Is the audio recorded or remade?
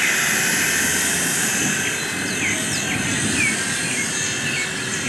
recorded